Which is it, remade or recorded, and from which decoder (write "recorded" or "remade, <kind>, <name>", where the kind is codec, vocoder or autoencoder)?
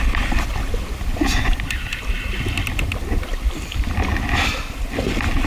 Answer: recorded